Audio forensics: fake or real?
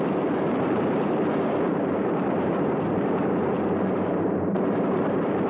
fake